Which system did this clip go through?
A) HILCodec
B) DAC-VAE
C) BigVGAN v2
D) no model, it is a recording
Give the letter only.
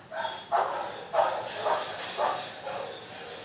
D